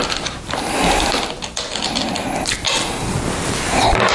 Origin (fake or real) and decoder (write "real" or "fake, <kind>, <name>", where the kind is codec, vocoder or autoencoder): real